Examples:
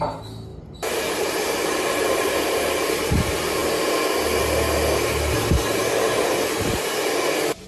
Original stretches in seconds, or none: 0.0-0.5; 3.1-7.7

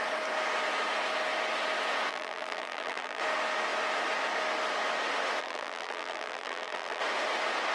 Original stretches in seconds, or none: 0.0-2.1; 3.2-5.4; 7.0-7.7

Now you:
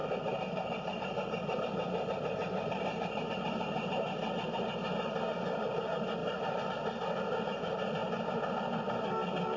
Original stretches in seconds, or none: 3.2-6.2; 6.7-9.6